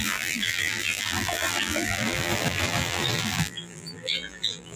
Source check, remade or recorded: remade